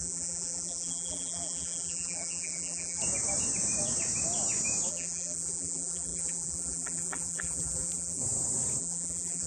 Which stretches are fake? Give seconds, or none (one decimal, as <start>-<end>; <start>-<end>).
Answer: 0.0-3.0; 4.9-8.2; 8.8-9.5